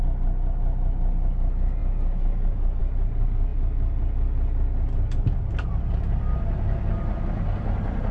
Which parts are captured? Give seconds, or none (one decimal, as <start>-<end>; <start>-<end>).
0.0-8.1